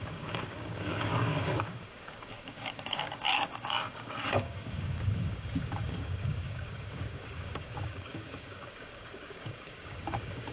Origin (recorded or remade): remade